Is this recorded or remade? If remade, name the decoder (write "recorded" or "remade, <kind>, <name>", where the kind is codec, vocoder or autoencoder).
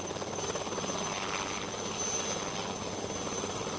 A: recorded